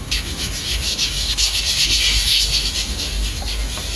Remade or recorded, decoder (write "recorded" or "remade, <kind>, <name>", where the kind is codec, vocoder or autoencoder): remade, codec, DAC